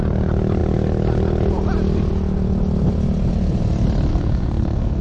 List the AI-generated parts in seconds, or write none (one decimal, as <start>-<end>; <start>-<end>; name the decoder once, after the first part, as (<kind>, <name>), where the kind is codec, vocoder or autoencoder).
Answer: 4.1-5.0 (codec, SNAC)